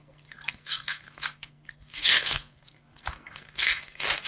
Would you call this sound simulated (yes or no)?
yes